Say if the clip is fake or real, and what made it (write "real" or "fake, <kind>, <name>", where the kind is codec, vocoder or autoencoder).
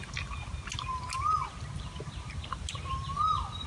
real